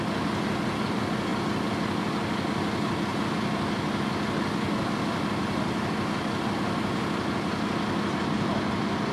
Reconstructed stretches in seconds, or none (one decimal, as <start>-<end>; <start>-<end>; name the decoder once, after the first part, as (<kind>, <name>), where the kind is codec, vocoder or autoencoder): none